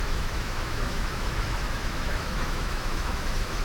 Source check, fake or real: fake